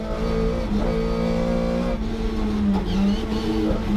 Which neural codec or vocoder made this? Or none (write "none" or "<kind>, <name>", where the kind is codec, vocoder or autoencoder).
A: none